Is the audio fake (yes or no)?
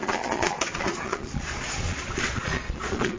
yes